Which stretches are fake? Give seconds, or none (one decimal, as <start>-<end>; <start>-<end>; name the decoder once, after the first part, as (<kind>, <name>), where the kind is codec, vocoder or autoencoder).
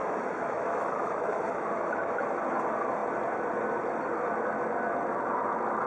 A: 0.0-2.2 (autoencoder, DAC-VAE)